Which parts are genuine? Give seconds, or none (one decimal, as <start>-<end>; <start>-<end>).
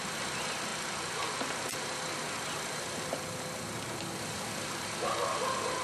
0.0-5.8